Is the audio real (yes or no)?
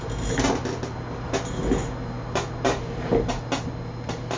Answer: yes